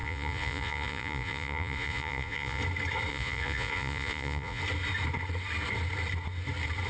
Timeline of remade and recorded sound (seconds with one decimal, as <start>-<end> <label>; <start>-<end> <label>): 0.0-2.6 remade; 2.6-3.1 recorded; 3.1-4.6 remade; 4.6-6.9 recorded

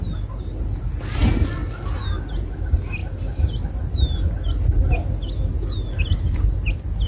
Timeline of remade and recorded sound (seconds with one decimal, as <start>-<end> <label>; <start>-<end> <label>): 0.0-7.1 recorded

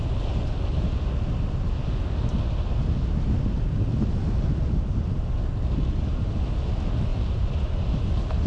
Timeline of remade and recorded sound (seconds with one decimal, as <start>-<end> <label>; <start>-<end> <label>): 0.0-7.1 recorded; 7.1-8.1 remade; 8.1-8.5 recorded